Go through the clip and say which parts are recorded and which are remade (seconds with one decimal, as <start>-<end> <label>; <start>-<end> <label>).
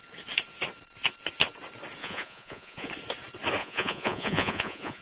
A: 0.0-2.0 recorded; 2.0-2.9 remade; 2.9-3.6 recorded; 3.6-5.0 remade